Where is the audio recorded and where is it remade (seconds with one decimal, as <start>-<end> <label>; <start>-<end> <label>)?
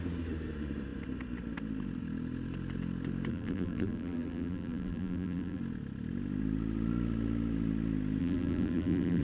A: 0.0-3.3 recorded; 3.3-5.6 remade; 5.6-8.2 recorded; 8.2-9.2 remade